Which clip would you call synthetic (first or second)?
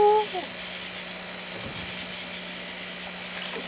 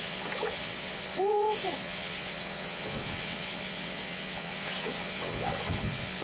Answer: second